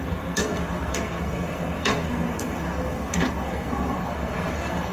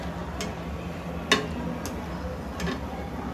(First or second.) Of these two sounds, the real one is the second